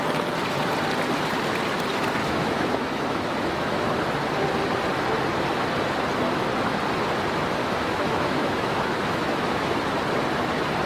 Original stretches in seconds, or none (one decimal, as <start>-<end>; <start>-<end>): 0.0-2.2; 3.9-7.6; 9.8-10.9